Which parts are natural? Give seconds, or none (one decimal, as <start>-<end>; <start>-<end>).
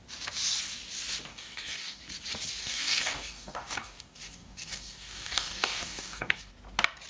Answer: 0.0-1.3; 2.0-2.6; 6.5-7.1